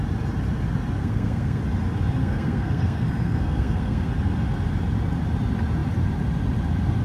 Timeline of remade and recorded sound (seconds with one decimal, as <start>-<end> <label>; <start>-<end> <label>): 0.0-1.0 recorded; 1.0-1.6 remade; 1.6-2.2 recorded; 2.2-4.1 remade; 4.1-7.0 recorded